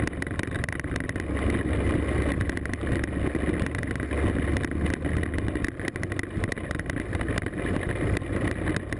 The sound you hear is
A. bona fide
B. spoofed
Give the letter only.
A